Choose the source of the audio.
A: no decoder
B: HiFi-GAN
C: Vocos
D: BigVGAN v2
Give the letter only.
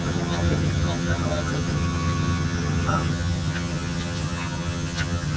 B